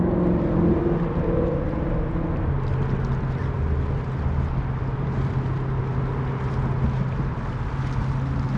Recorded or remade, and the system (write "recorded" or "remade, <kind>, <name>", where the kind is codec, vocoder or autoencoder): recorded